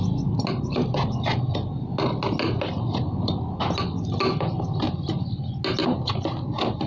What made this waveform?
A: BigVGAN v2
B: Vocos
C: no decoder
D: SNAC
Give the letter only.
C